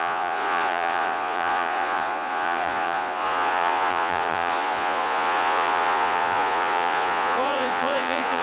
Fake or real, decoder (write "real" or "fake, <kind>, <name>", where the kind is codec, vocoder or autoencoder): fake, vocoder, Vocos